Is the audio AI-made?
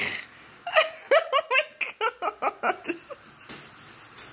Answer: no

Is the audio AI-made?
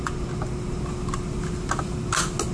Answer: no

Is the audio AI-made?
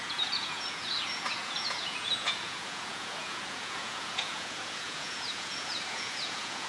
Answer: yes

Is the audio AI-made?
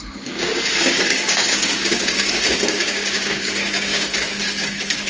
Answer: yes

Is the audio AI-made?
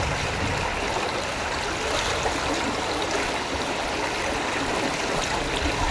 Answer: no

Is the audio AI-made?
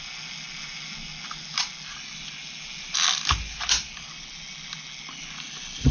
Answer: no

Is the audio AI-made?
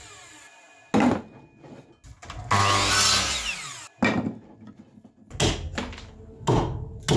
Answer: no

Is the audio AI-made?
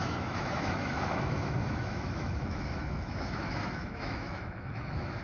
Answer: yes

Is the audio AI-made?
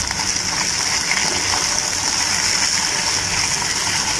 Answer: no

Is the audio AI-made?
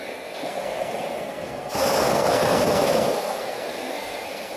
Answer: yes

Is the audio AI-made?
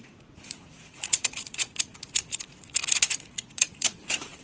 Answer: yes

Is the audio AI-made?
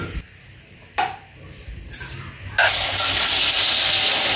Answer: no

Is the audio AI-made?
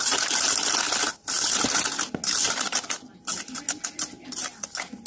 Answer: no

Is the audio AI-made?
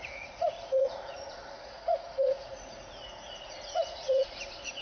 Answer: yes